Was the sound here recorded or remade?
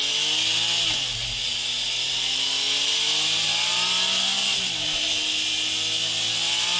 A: recorded